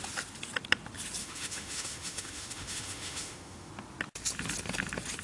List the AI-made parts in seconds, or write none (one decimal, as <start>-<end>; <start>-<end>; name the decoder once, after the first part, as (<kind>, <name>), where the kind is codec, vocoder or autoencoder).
1.2-3.7 (autoencoder, DAC-VAE)